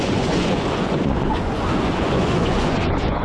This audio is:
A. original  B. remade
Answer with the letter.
B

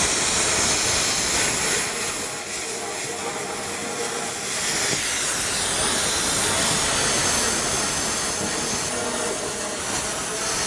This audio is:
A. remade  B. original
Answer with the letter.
B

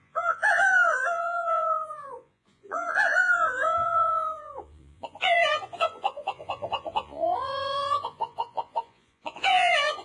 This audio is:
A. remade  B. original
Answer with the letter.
A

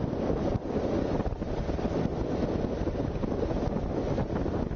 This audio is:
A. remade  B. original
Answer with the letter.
B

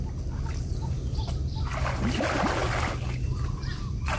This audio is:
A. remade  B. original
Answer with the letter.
B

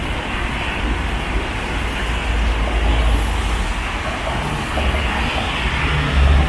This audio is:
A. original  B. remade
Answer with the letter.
A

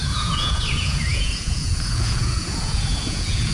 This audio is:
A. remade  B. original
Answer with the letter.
A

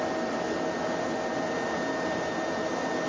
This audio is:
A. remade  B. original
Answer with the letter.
B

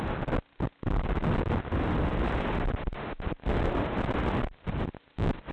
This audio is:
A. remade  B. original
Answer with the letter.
B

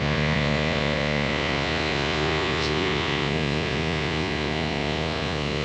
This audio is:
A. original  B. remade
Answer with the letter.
B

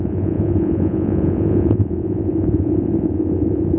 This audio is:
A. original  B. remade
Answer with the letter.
B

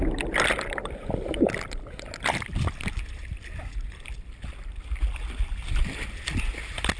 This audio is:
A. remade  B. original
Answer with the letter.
B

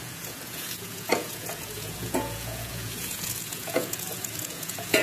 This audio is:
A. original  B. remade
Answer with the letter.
B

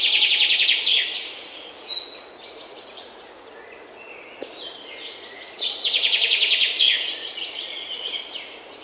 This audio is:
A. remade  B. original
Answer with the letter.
A